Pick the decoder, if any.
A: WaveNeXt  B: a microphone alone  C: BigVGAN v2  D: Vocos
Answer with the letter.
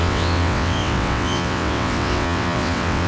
A